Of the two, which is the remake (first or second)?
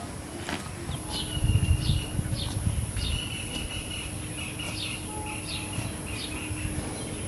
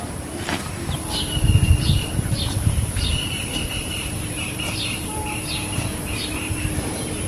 second